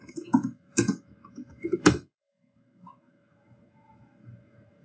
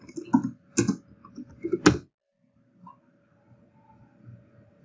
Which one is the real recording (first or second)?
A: second